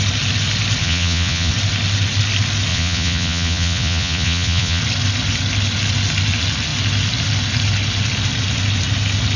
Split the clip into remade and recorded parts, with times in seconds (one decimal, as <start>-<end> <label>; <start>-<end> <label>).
0.0-0.8 recorded; 0.8-1.5 remade; 1.5-2.7 recorded; 2.7-4.8 remade; 4.8-9.4 recorded